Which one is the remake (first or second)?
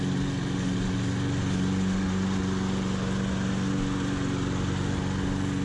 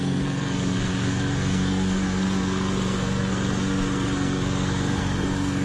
second